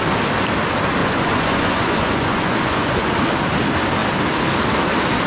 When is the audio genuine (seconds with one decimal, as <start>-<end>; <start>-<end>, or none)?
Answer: 0.0-1.0; 3.1-5.3